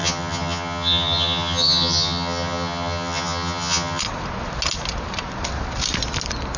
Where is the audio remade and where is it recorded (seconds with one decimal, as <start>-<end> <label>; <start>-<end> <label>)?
0.0-4.0 remade; 4.0-6.6 recorded

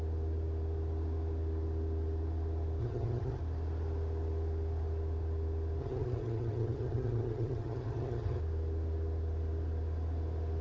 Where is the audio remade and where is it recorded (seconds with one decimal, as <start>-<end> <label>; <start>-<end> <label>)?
0.0-2.8 recorded; 2.8-3.4 remade; 3.4-5.8 recorded; 5.8-8.4 remade; 8.4-10.6 recorded